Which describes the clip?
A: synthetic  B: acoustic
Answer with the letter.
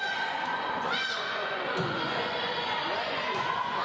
A